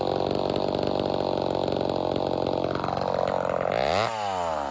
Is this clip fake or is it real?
real